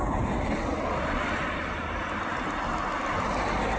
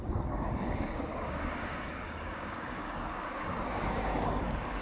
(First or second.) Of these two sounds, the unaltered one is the first